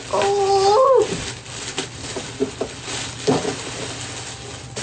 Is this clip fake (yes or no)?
no